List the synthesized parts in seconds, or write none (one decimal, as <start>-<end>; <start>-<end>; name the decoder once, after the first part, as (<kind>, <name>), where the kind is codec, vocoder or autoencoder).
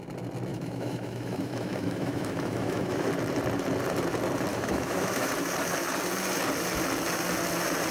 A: 0.5-3.1 (autoencoder, DAC-VAE); 4.5-5.3